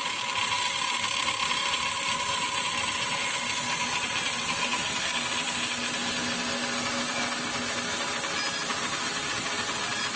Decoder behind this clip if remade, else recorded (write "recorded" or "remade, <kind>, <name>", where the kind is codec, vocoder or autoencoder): recorded